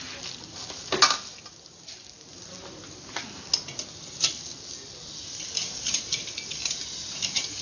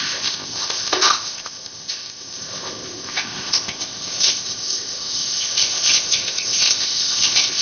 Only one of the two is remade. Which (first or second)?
second